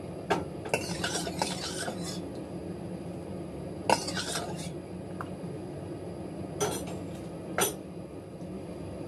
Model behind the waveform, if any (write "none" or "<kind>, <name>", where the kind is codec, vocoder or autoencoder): none